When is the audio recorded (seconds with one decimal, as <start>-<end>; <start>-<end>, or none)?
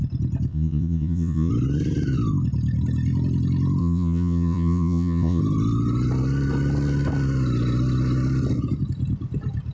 0.0-0.5; 1.5-3.8; 5.4-9.7